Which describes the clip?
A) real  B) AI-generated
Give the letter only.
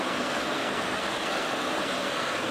B